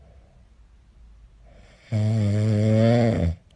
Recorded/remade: recorded